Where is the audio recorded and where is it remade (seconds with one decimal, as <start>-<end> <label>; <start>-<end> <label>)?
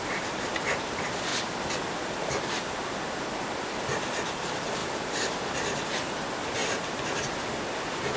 0.0-4.8 recorded; 4.8-5.8 remade; 5.8-6.6 recorded; 6.6-7.2 remade; 7.2-8.2 recorded